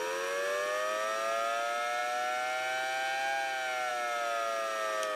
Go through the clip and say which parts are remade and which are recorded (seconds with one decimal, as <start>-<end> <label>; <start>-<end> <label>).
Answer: 0.0-5.2 recorded